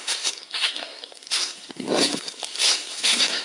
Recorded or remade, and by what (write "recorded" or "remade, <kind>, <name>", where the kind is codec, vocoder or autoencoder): remade, codec, SNAC